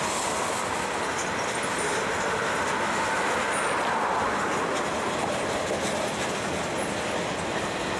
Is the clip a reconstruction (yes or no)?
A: no